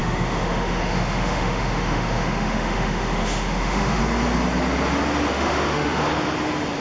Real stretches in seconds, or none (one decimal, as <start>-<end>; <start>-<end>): 4.0-5.3; 6.0-6.8